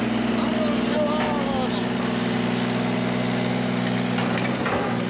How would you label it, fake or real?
real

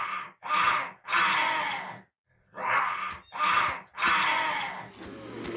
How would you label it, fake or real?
real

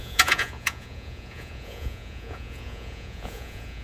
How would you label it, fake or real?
fake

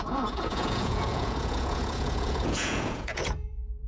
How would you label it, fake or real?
fake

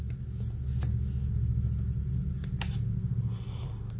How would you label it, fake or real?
real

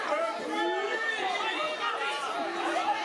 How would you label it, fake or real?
real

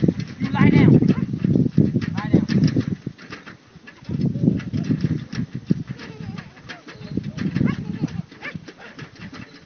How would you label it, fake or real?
real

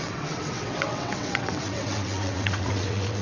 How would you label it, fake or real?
fake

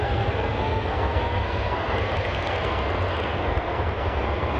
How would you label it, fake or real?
fake